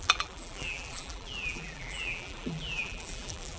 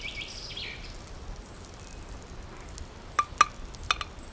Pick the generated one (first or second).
first